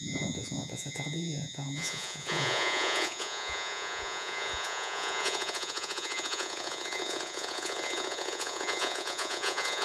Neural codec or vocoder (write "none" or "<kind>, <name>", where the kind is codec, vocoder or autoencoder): vocoder, Vocos